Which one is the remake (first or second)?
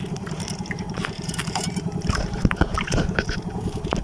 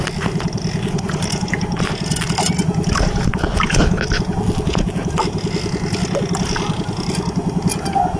first